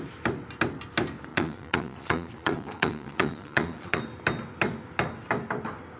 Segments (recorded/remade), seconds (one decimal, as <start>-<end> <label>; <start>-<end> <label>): 0.0-1.3 recorded; 1.3-4.0 remade; 4.0-6.0 recorded